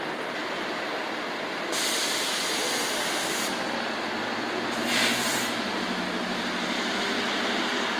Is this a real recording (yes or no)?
no